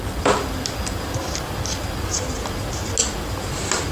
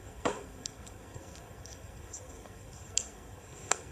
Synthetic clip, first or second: second